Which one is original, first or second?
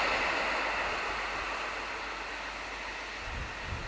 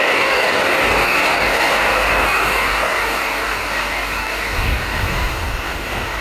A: first